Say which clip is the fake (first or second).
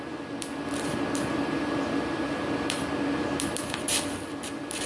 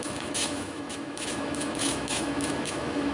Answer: second